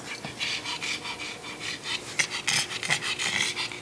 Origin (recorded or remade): recorded